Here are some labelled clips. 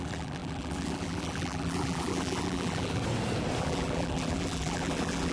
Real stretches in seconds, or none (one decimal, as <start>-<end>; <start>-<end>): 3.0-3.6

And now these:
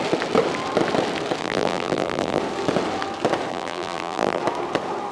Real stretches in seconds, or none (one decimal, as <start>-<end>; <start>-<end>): 0.0-1.4; 2.4-3.5; 4.4-5.1

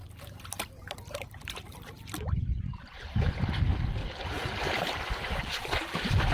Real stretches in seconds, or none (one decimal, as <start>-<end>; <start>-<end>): 3.5-4.0; 5.6-6.3

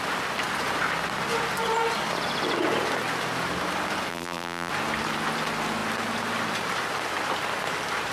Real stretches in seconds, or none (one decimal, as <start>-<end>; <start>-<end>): 0.0-4.1; 4.7-8.1

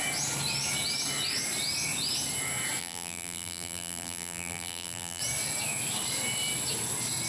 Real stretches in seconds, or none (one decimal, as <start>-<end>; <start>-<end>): 0.0-2.8; 5.2-7.3